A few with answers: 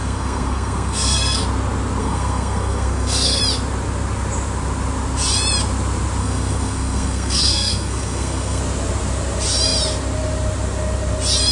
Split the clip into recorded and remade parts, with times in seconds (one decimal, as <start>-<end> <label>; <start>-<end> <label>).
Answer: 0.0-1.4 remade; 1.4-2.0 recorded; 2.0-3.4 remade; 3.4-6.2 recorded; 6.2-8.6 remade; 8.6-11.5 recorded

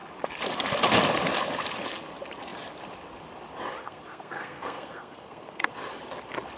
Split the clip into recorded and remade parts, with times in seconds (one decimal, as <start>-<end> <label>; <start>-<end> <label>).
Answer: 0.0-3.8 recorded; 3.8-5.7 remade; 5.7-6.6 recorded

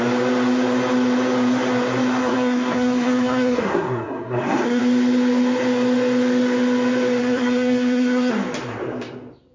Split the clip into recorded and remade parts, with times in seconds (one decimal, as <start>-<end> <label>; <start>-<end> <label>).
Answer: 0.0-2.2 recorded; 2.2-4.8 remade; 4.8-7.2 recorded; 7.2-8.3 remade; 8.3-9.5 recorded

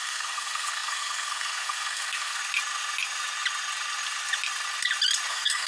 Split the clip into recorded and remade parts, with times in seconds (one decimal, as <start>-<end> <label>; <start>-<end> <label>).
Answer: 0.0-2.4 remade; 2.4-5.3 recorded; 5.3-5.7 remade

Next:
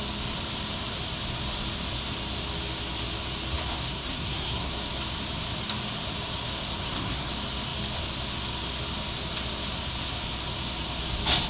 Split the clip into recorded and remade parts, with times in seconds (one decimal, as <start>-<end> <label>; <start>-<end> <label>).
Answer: 0.0-3.9 recorded; 3.9-4.7 remade; 4.7-6.8 recorded; 6.8-7.3 remade; 7.3-11.5 recorded

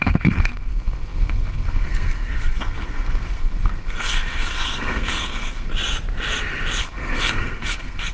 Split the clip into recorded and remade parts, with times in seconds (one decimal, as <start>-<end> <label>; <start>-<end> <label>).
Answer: 0.0-5.7 remade; 5.7-6.8 recorded; 6.8-8.1 remade